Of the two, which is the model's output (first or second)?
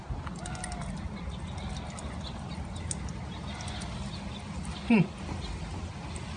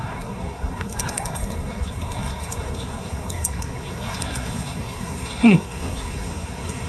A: second